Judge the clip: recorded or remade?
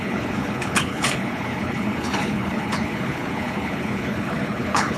remade